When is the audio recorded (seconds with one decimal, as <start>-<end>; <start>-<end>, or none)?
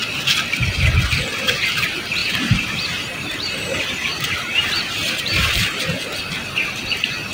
0.0-2.2; 5.8-7.3